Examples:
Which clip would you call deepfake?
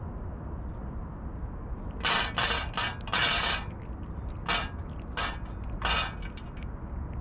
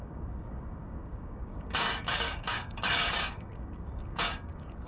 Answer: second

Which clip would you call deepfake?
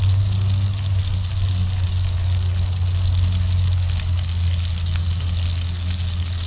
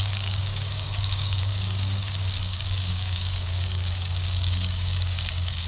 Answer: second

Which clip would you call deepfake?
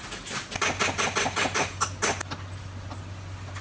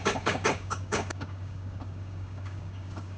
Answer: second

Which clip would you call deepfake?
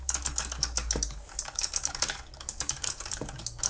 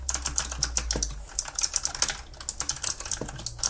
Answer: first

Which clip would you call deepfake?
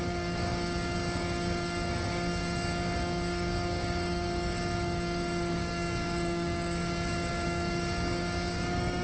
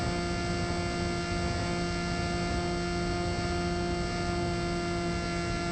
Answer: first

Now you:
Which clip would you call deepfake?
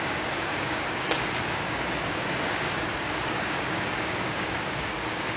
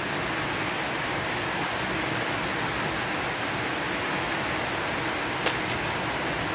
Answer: first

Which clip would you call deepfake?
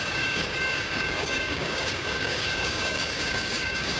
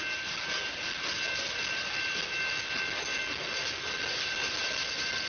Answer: first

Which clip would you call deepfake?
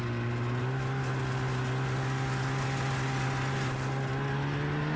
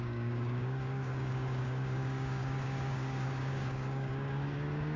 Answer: second